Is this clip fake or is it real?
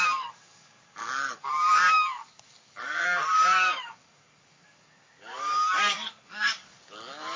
fake